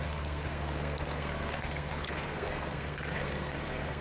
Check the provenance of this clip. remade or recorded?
remade